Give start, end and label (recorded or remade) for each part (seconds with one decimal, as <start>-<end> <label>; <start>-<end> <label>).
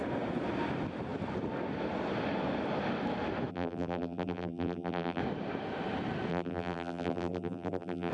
0.0-3.5 recorded; 3.5-5.2 remade; 5.2-6.3 recorded; 6.3-8.1 remade